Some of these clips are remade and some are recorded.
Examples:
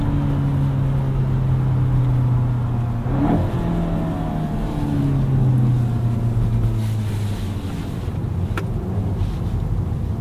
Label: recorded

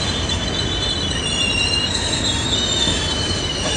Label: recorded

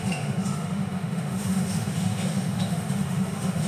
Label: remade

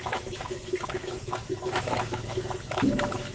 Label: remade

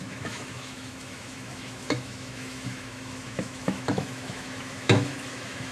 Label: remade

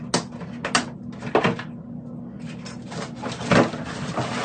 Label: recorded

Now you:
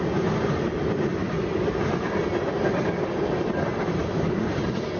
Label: recorded